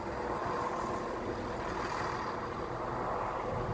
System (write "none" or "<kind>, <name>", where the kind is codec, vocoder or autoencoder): none